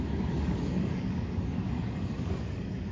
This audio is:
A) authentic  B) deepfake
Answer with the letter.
B